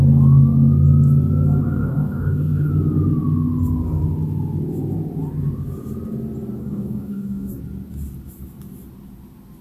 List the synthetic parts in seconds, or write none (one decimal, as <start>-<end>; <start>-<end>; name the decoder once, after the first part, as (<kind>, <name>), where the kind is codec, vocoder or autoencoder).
1.6-2.7 (codec, DAC); 6.6-7.6

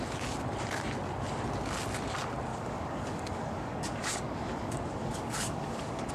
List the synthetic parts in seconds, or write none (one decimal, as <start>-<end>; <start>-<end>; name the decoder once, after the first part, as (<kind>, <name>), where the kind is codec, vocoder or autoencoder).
2.5-6.1 (codec, DAC)